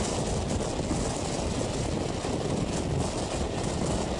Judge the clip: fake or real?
real